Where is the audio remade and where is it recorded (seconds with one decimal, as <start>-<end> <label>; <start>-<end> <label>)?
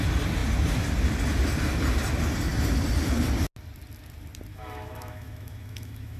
0.0-4.5 recorded; 4.5-6.2 remade